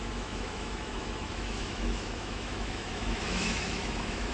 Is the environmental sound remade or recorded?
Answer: remade